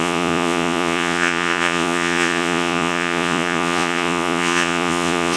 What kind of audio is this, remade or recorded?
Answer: remade